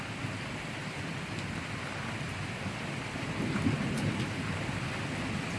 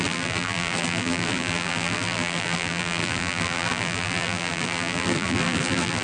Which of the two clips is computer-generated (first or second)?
second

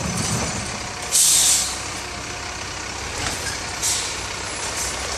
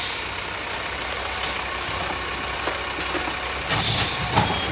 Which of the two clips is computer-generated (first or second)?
first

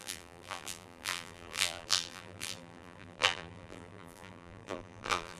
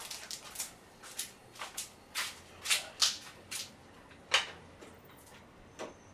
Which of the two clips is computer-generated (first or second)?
first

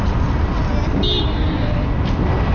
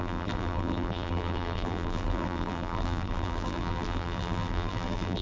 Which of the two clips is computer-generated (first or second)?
second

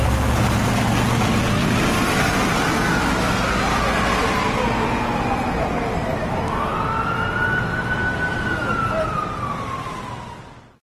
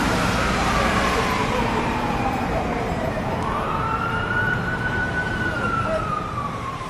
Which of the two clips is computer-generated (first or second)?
second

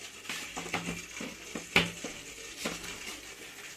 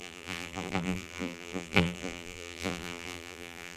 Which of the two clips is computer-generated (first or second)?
second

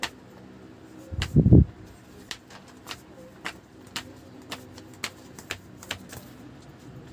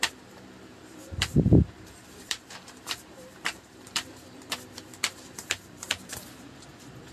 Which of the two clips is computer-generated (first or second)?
second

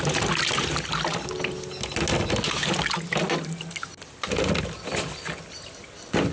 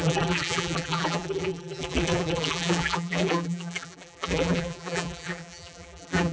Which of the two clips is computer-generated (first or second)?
second